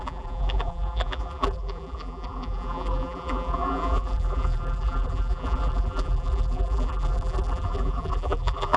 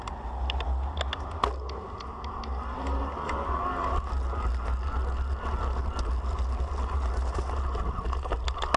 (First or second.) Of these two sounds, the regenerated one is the first